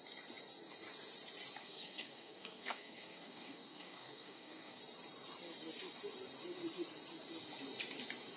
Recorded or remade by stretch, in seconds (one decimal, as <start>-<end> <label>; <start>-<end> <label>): 0.0-1.6 recorded; 1.6-4.8 remade; 4.8-8.4 recorded